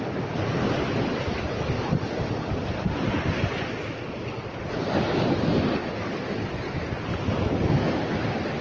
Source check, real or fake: real